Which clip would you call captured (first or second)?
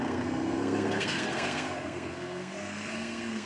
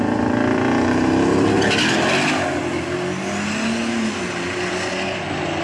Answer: second